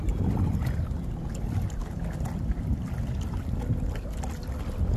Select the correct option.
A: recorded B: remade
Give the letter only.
A